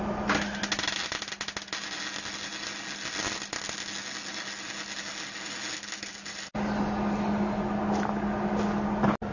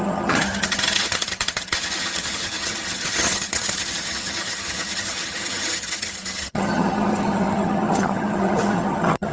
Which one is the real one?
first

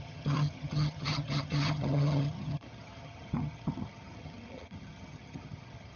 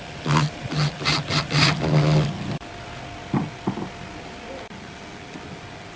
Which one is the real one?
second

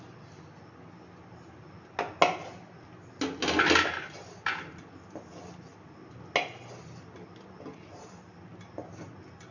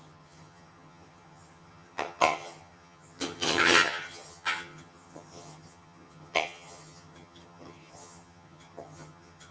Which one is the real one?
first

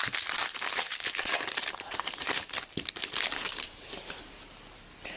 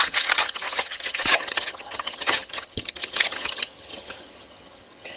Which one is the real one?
first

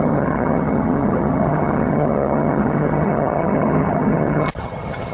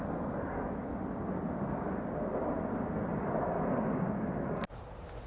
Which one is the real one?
second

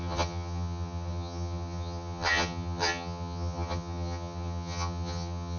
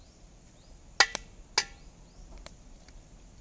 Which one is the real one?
second